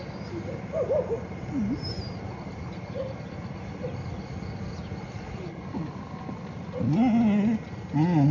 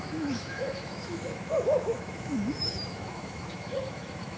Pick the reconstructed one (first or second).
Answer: second